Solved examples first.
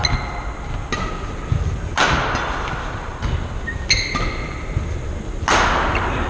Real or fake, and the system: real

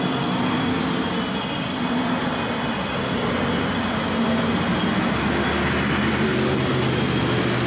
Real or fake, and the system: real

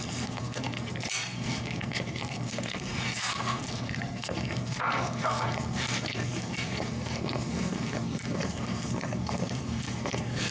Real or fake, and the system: fake, codec, SNAC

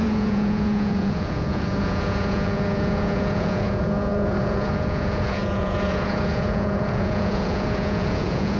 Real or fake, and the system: fake, vocoder, Vocos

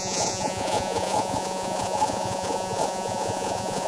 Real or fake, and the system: fake, vocoder, Vocos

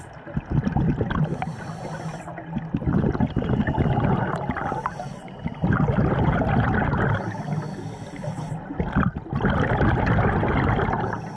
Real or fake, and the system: real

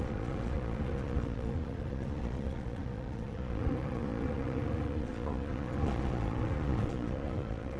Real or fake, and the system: fake, vocoder, Vocos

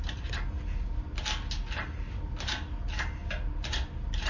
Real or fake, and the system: real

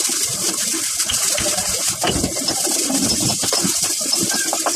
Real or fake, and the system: fake, vocoder, BigVGAN v2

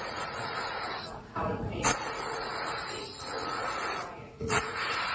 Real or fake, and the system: fake, vocoder, Vocos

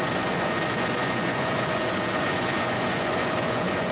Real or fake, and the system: fake, vocoder, Vocos